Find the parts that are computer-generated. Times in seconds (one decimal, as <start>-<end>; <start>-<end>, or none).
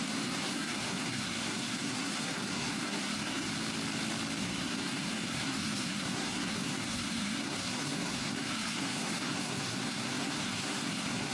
0.0-3.5; 4.4-11.3